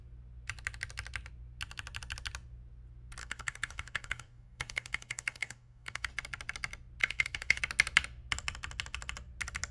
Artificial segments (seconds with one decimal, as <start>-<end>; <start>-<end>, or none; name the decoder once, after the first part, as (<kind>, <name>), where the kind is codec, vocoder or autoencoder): 3.2-6.1 (codec, DAC); 7.0-7.6